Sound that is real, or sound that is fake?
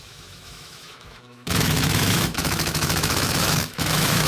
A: fake